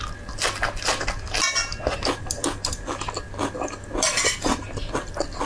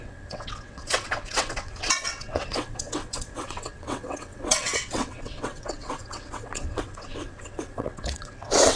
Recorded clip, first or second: first